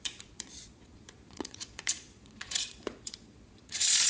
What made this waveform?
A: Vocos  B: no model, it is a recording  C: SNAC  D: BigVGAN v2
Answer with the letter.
A